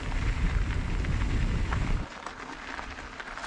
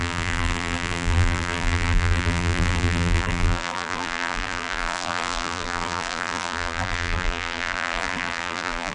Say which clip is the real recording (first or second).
first